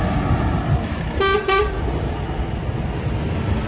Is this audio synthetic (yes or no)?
no